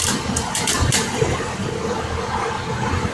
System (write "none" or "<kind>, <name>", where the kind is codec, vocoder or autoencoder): none